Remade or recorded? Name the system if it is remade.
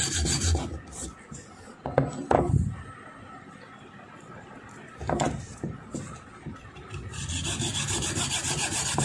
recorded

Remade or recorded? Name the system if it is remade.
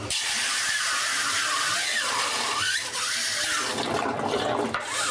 remade, vocoder, BigVGAN v2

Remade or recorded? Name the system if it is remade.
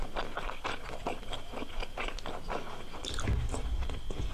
recorded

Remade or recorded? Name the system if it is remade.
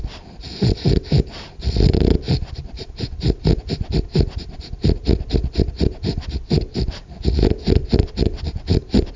recorded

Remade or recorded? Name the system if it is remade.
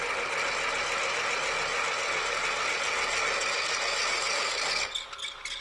recorded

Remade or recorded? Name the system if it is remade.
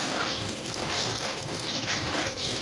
remade, codec, DAC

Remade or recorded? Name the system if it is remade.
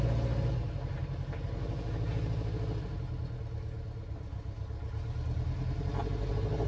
recorded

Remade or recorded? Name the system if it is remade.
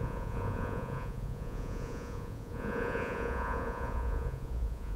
remade, vocoder, Vocos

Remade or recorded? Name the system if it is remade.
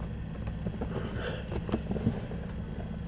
recorded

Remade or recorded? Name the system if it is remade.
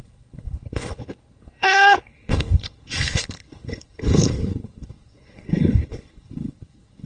remade, codec, HILCodec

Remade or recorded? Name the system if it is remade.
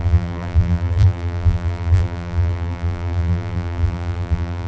remade, vocoder, BigVGAN v2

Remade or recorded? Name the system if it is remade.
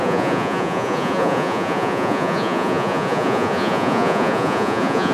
remade, vocoder, Vocos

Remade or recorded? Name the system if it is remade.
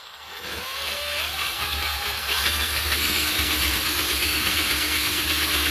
remade, codec, SNAC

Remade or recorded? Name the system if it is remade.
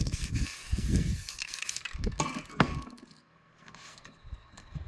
remade, codec, SNAC